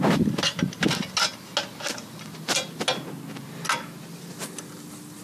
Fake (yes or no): no